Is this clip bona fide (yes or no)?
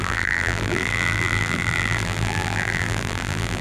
no